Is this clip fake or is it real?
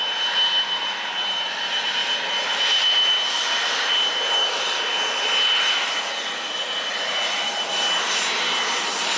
real